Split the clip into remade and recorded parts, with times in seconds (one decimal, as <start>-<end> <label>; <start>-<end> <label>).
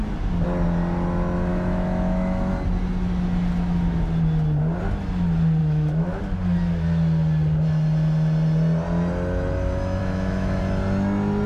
0.0-1.5 recorded; 1.5-2.5 remade; 2.5-5.6 recorded; 5.6-6.2 remade; 6.2-10.0 recorded; 10.0-10.6 remade; 10.6-11.5 recorded